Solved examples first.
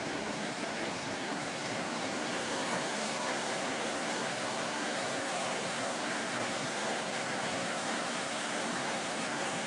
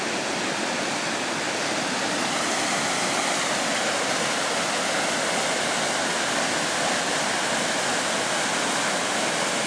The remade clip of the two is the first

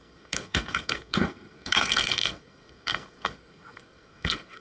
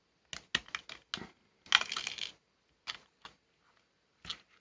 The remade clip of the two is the first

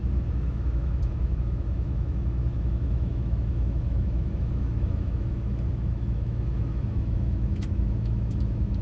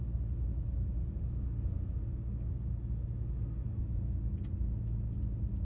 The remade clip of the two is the first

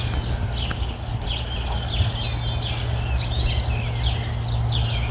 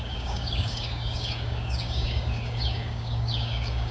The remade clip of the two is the second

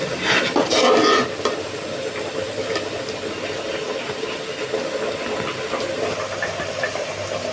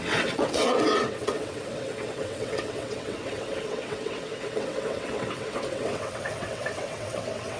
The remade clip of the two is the second